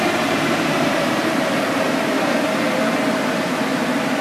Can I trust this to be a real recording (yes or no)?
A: no